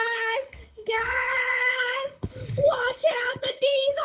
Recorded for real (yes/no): no